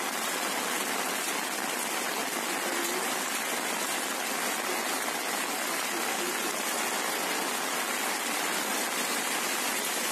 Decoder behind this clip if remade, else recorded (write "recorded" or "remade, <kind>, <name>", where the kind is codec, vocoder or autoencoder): recorded